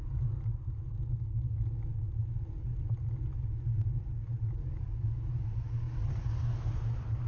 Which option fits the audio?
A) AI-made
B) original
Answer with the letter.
B